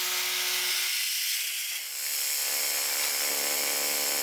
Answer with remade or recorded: recorded